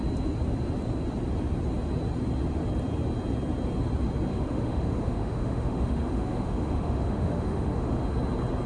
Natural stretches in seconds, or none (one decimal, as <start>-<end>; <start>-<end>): 0.0-4.3; 8.1-8.7